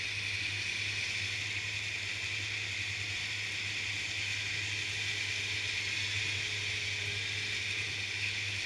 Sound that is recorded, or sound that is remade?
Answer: recorded